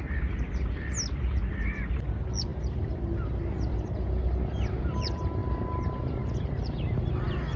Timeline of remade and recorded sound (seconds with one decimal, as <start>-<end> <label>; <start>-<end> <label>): 0.0-7.6 recorded